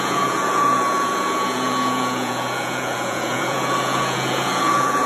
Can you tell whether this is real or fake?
fake